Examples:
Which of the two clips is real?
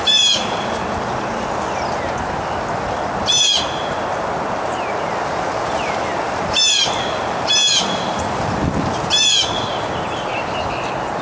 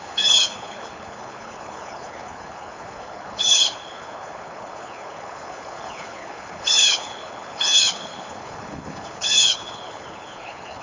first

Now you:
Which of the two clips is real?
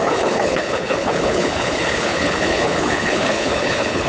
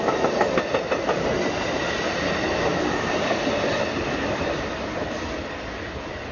second